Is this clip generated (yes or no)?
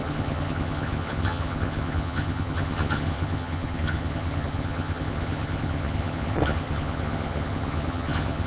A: yes